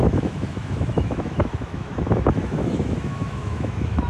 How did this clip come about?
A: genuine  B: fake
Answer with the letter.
B